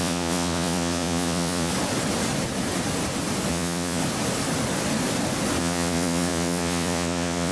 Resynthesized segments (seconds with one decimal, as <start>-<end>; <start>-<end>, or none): 0.0-1.7; 3.5-4.0; 5.6-7.5